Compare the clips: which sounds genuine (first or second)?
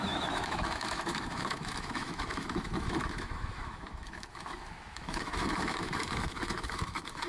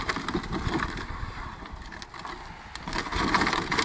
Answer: second